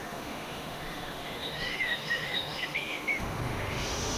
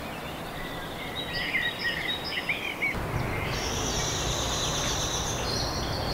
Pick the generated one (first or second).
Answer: first